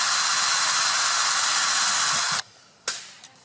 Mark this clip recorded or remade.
recorded